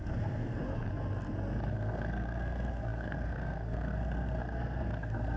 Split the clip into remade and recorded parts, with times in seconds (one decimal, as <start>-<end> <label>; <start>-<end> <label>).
0.0-0.6 remade; 0.6-1.7 recorded; 1.7-5.4 remade